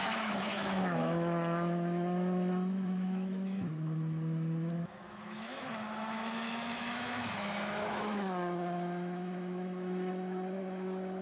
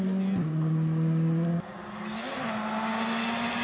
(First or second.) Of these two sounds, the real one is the second